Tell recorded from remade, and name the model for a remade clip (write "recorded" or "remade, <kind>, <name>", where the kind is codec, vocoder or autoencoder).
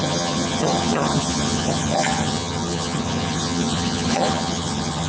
remade, vocoder, HiFi-GAN